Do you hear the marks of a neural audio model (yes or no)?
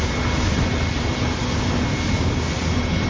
no